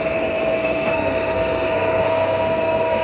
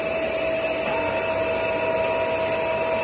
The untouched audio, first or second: second